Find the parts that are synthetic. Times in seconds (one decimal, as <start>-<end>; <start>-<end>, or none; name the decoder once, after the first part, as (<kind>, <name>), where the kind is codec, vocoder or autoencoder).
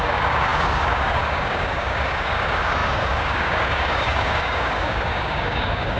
0.0-6.0 (codec, DAC)